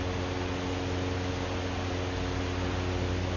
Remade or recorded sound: recorded